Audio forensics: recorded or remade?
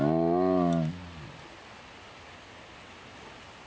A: recorded